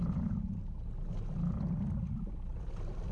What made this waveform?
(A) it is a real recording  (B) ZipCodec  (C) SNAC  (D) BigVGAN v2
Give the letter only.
A